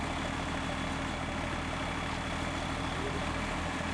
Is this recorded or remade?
recorded